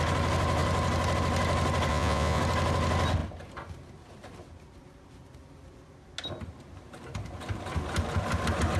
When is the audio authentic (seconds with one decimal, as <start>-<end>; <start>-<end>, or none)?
0.0-1.9; 2.4-8.8